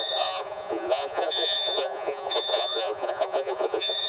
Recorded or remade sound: remade